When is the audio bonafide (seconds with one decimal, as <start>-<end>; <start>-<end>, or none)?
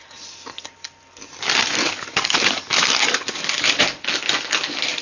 0.0-1.8; 3.8-5.0